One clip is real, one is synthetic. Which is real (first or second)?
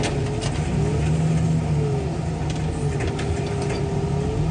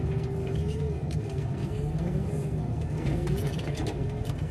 first